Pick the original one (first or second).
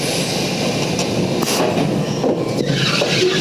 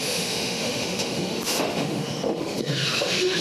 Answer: first